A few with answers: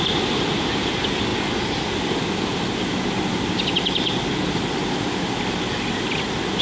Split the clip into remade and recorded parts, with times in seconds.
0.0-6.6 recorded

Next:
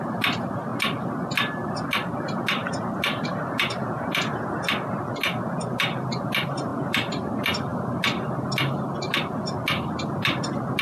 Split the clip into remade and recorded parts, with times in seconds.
0.0-6.7 recorded; 6.7-7.3 remade; 7.3-10.8 recorded

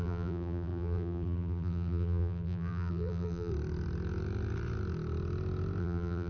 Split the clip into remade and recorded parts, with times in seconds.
0.0-3.5 remade; 3.5-5.8 recorded; 5.8-6.3 remade

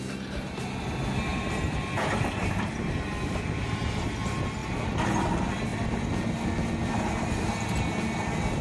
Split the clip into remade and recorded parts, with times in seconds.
0.0-1.3 recorded; 1.3-3.6 remade; 3.6-4.6 recorded; 4.6-5.2 remade; 5.2-8.6 recorded

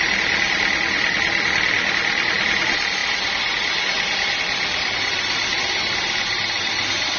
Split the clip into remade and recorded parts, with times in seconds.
0.0-3.0 remade; 3.0-4.4 recorded; 4.4-7.2 remade

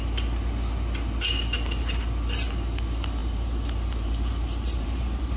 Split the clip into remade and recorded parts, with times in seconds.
0.0-3.2 recorded; 3.2-5.4 remade

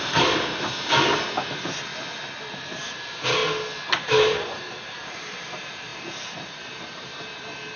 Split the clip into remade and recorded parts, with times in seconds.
0.0-1.9 remade; 1.9-2.5 recorded; 2.5-3.4 remade; 3.4-4.0 recorded; 4.0-7.8 remade

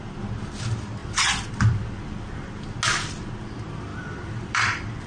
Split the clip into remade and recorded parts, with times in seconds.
0.0-1.0 recorded; 1.0-1.6 remade; 1.6-3.9 recorded; 3.9-5.1 remade